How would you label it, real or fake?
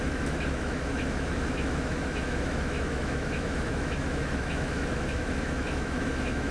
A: fake